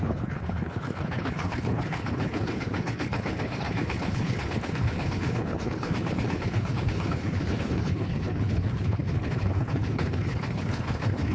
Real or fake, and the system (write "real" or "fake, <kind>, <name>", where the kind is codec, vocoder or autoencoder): fake, codec, HILCodec